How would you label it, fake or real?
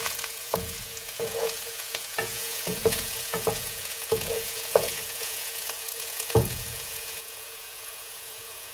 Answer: fake